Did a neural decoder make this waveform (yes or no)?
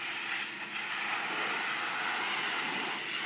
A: no